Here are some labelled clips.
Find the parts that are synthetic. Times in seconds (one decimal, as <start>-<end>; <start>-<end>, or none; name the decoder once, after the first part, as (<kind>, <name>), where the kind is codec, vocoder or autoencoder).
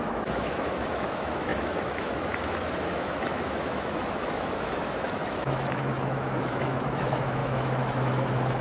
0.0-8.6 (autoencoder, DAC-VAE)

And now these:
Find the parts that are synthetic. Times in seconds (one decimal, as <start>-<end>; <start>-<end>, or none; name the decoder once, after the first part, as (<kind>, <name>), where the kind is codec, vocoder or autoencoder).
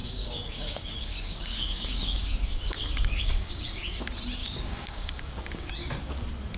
0.0-4.0 (codec, DAC); 4.4-5.7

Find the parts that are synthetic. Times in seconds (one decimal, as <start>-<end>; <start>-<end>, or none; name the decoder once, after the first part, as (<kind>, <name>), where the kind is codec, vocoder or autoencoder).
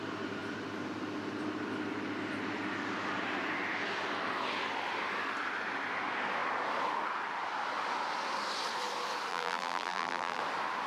9.3-10.4 (vocoder, BigVGAN v2)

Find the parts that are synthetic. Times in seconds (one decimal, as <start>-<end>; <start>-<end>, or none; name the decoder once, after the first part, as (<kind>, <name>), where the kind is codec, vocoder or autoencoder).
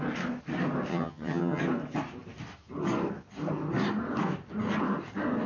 0.9-1.6 (vocoder, HiFi-GAN)